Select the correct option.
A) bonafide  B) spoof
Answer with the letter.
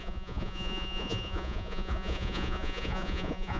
B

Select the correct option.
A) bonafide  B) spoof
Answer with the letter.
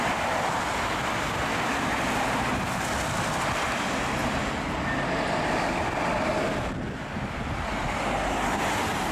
A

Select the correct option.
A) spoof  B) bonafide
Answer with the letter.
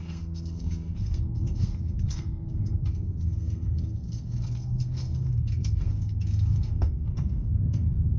A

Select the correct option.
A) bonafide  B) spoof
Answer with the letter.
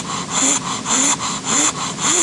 A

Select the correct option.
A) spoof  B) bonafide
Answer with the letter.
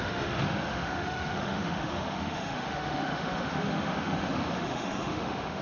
A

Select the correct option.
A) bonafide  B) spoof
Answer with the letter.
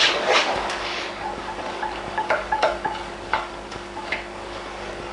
B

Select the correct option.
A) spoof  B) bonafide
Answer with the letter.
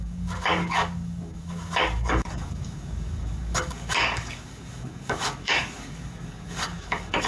A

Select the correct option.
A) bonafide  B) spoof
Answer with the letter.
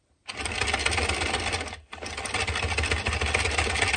A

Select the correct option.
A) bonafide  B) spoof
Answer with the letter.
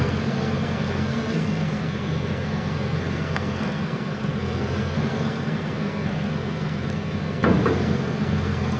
B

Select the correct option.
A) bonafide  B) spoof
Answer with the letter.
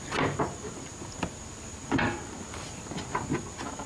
A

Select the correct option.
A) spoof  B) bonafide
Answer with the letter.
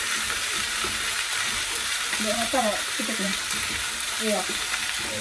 A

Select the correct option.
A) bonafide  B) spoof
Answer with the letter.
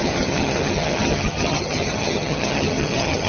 B